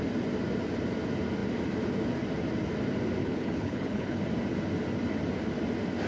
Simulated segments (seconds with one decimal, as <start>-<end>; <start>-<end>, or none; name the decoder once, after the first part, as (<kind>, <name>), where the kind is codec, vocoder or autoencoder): 3.2-4.2 (codec, HILCodec)

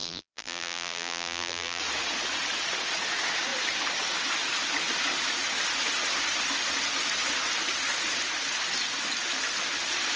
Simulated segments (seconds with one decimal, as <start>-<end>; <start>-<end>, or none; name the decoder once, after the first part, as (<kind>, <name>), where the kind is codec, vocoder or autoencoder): 0.0-1.8 (vocoder, BigVGAN v2)

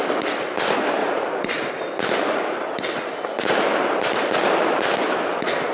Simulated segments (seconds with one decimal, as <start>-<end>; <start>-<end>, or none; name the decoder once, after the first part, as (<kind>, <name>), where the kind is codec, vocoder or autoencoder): 1.0-1.7 (vocoder, Vocos)

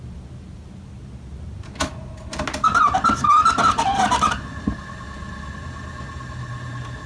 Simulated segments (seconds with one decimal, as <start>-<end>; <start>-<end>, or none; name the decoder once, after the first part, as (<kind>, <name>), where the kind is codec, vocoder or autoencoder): none

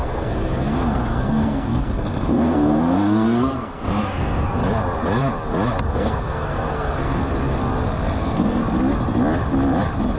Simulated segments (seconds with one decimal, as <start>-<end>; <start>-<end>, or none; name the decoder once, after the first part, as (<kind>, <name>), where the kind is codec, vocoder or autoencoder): 0.0-4.6 (codec, SNAC); 5.9-7.2; 8.2-8.6